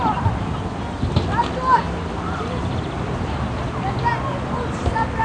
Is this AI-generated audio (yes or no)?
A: no